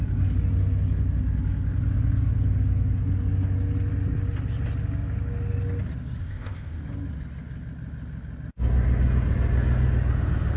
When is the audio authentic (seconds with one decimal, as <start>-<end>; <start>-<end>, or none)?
0.0-6.2; 6.8-10.6